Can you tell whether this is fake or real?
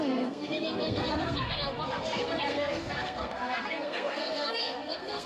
fake